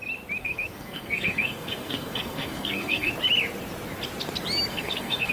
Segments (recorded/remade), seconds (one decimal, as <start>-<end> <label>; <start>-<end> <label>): 0.0-0.4 recorded; 0.4-3.1 remade; 3.1-4.7 recorded; 4.7-5.3 remade